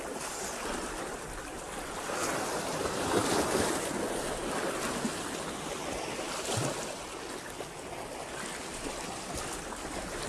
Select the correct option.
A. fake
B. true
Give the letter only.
B